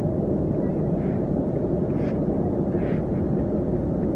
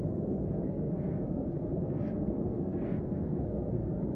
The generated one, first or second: second